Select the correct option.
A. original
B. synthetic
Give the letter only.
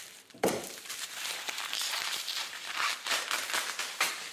B